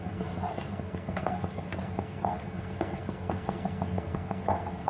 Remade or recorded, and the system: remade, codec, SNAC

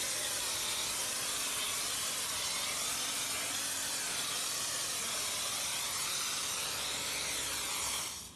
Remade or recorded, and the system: recorded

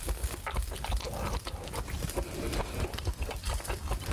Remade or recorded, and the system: recorded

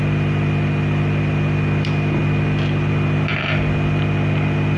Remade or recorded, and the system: recorded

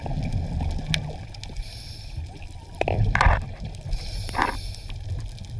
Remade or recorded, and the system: recorded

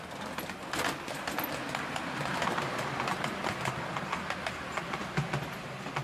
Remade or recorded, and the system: recorded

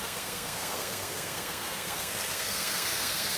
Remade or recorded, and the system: remade, codec, SNAC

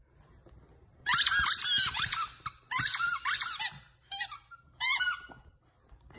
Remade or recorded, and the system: recorded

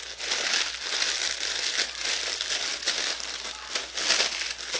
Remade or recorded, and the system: recorded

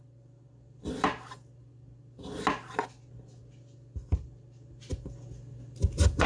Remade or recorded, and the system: recorded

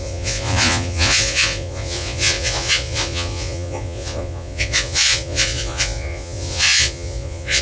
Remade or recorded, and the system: remade, vocoder, Vocos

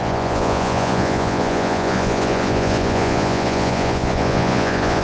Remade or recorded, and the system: remade, vocoder, Vocos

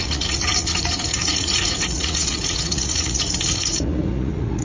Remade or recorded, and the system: remade, vocoder, Vocos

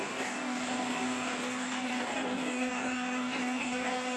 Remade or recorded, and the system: remade, codec, DAC